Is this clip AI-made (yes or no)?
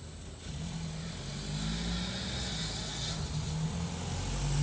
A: no